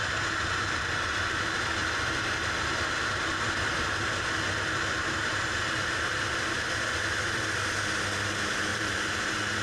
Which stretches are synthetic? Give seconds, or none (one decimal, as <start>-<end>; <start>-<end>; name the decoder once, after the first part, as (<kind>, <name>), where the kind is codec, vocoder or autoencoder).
8.7-9.6 (vocoder, BigVGAN v2)